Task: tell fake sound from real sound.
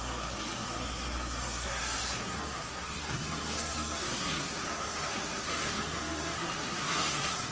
fake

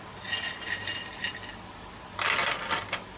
real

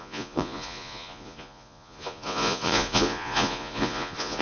fake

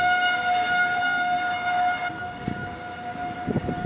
fake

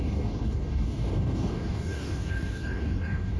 fake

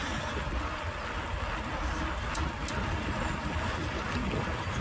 real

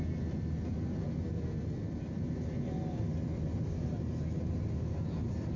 real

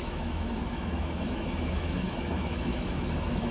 fake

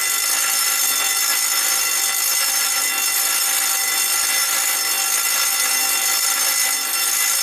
real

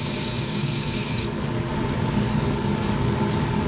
fake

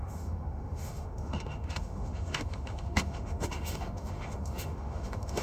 fake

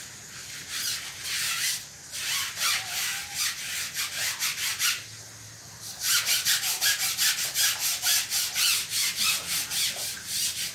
real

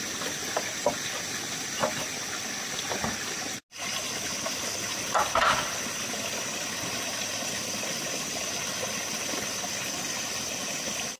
real